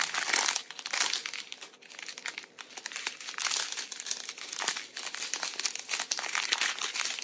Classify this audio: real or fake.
real